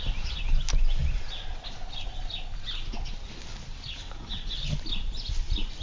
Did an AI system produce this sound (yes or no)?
no